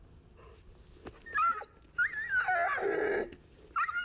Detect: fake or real real